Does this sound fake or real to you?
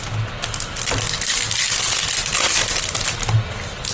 real